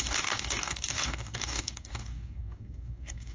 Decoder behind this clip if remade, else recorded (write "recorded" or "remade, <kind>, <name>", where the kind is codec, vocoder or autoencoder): remade, codec, DAC